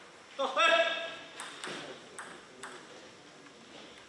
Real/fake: real